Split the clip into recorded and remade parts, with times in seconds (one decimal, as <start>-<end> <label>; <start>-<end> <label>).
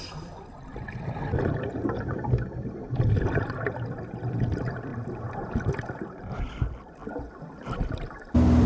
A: 0.0-7.0 remade; 7.0-7.9 recorded; 7.9-8.7 remade